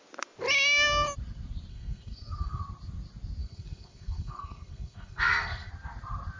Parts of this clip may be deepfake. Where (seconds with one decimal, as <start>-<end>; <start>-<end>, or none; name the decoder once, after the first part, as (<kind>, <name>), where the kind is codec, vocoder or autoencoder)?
1.7-2.6 (codec, SNAC); 3.4-5.7